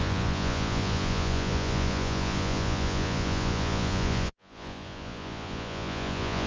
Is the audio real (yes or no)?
no